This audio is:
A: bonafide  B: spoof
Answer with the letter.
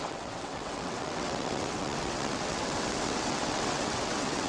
B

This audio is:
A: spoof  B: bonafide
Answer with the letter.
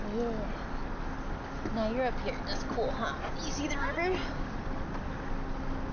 B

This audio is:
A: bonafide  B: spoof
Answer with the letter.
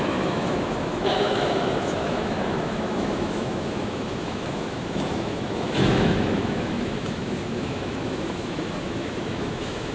B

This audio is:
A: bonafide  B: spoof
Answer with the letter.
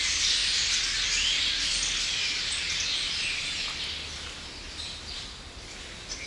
A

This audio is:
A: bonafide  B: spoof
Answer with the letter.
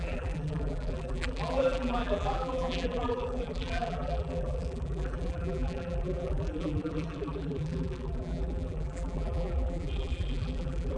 B